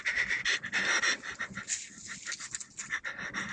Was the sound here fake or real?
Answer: real